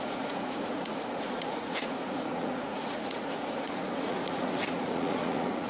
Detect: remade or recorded remade